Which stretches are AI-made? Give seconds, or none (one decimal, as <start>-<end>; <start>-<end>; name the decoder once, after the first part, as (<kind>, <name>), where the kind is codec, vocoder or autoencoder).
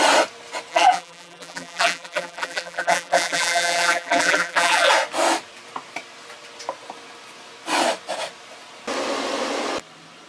0.7-4.9 (vocoder, BigVGAN v2)